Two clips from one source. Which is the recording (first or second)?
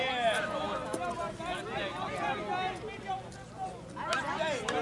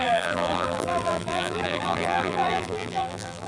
first